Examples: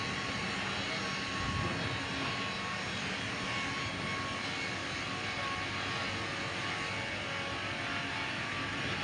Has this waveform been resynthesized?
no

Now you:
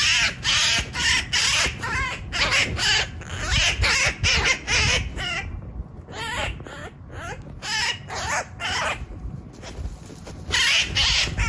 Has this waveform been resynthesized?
no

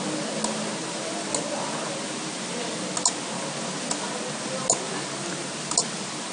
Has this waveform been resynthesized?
no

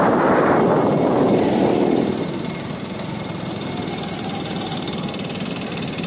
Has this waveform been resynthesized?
yes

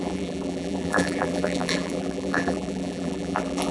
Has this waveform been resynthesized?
yes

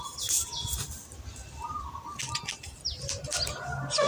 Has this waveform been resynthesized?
no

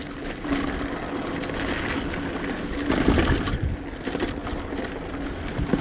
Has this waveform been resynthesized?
no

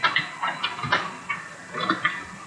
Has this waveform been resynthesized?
no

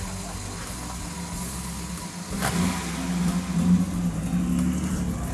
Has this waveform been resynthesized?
no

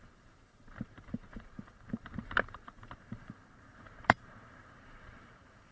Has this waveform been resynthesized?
yes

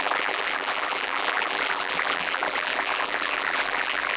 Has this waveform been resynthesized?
yes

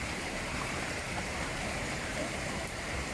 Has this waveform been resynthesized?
yes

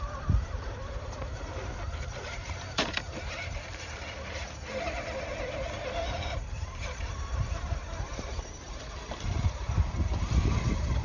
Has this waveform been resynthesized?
yes